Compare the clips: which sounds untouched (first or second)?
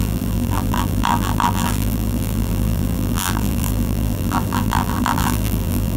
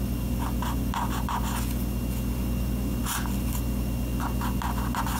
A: second